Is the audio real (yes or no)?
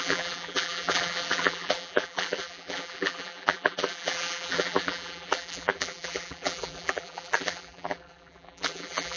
no